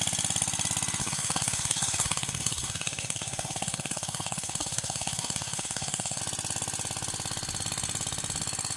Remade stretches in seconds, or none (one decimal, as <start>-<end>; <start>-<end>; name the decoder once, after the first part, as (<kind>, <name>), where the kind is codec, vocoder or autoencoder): 1.0-6.2 (codec, SNAC)